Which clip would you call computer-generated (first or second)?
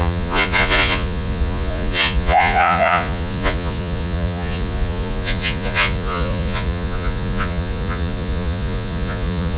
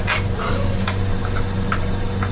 first